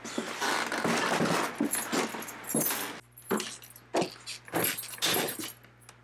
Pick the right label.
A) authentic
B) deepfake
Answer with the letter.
A